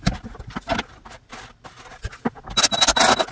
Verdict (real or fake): real